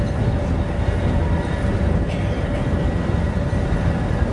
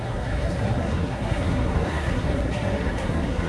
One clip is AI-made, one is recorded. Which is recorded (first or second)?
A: first